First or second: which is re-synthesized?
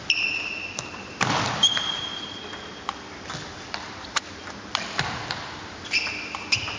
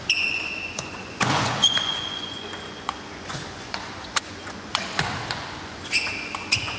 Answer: second